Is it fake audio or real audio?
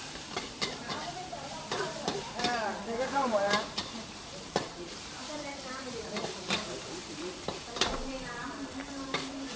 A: fake